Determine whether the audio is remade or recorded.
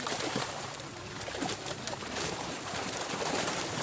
remade